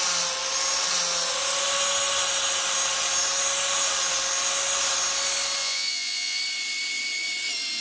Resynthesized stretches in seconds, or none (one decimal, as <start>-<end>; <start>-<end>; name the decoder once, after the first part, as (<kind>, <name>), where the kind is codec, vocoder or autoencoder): 5.6-6.4 (vocoder, Vocos)